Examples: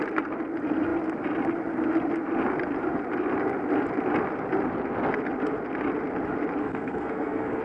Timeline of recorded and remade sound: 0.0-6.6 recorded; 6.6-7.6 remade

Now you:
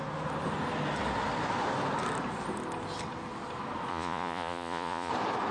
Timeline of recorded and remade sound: 0.0-3.9 recorded; 3.9-5.1 remade; 5.1-5.5 recorded